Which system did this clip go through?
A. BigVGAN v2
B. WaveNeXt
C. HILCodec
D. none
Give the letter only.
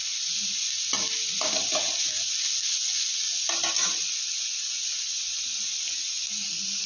D